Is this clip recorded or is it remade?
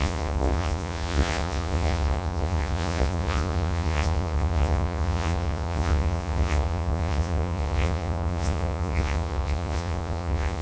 remade